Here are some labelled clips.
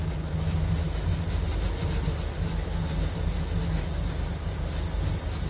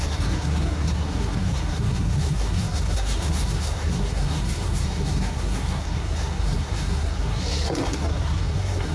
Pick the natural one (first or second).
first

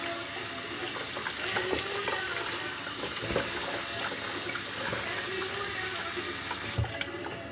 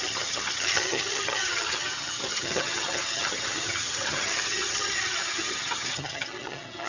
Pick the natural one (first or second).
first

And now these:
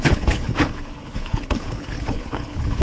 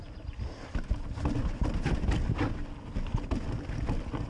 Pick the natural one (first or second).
second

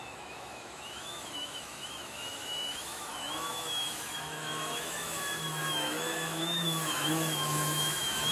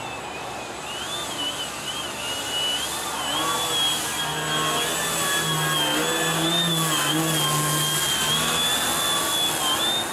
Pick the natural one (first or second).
second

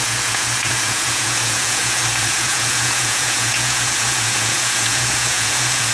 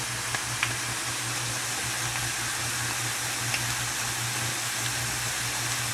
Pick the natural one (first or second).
second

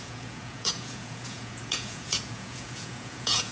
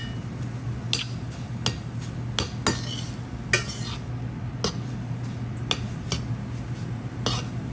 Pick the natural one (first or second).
second